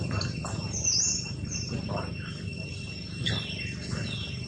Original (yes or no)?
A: yes